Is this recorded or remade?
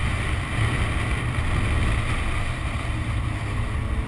recorded